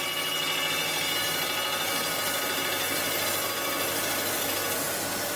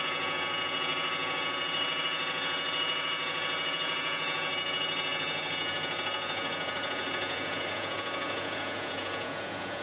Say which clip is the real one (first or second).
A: first